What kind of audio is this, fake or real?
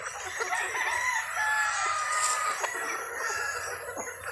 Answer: real